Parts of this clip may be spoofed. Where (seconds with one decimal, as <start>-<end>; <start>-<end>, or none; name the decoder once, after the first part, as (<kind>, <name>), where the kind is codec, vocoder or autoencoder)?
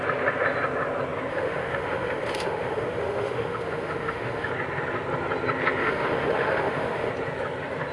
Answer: 1.3-4.5 (autoencoder, DAC-VAE); 5.8-7.1